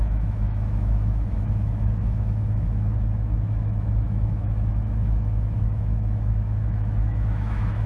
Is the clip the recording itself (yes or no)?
no